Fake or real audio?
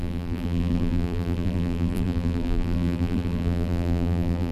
fake